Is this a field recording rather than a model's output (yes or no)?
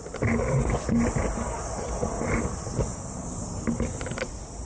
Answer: yes